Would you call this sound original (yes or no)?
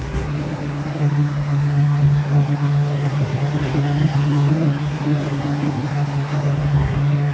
no